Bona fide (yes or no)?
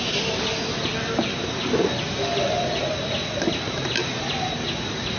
yes